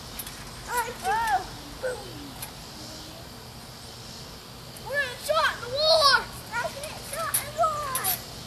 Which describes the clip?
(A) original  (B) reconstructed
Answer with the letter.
A